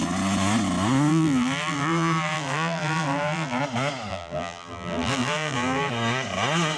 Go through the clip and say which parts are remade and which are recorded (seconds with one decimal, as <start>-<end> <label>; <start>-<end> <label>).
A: 0.0-1.1 recorded; 1.1-3.6 remade; 3.6-4.1 recorded; 4.1-5.9 remade; 5.9-6.8 recorded

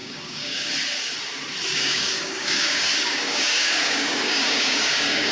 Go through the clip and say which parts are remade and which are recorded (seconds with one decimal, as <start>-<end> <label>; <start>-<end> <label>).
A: 0.0-0.7 remade; 0.7-1.7 recorded; 1.7-5.3 remade

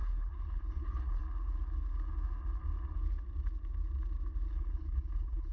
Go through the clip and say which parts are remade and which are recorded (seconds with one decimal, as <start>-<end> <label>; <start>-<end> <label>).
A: 0.0-1.2 remade; 1.2-4.5 recorded; 4.5-5.5 remade

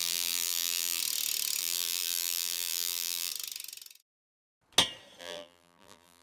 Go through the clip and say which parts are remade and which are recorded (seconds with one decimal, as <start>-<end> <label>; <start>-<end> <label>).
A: 0.0-1.0 remade; 1.0-1.6 recorded; 1.6-3.3 remade; 3.3-5.2 recorded; 5.2-6.2 remade